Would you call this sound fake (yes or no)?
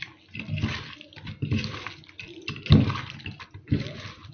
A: no